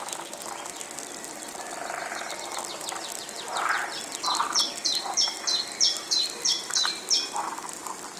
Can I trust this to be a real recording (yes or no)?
yes